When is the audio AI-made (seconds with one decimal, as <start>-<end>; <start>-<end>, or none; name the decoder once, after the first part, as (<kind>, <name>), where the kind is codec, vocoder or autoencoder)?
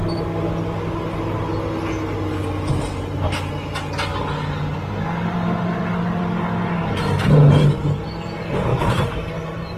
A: 8.7-9.8 (vocoder, BigVGAN v2)